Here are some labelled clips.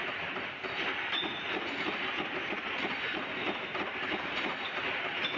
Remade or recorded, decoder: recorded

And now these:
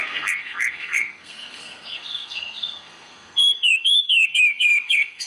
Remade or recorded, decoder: remade, codec, SNAC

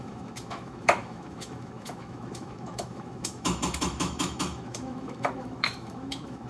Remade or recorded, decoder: remade, autoencoder, DAC-VAE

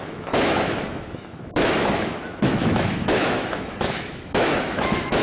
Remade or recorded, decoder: remade, autoencoder, DAC-VAE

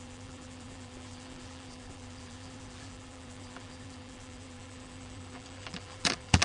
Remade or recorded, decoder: remade, vocoder, BigVGAN v2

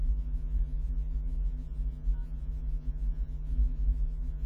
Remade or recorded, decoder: remade, vocoder, Vocos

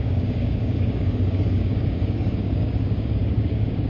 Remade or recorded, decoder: remade, codec, DAC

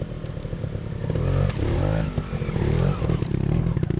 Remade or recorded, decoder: recorded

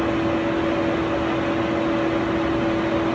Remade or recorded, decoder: recorded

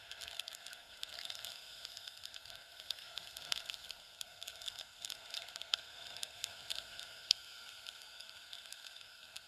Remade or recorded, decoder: remade, codec, SNAC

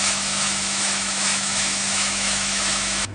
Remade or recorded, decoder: remade, autoencoder, DAC-VAE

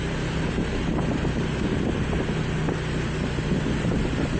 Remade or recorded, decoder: recorded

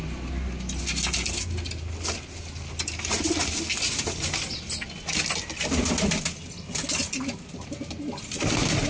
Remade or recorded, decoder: recorded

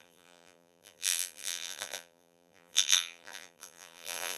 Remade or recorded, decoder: remade, vocoder, BigVGAN v2